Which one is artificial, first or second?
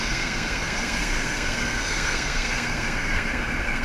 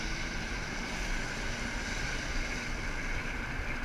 first